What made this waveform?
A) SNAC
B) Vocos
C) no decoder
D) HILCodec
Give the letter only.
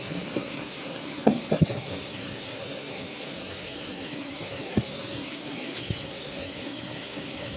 A